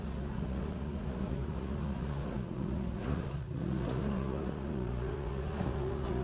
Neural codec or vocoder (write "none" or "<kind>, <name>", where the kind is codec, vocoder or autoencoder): vocoder, Vocos